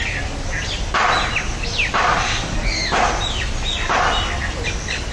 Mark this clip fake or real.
real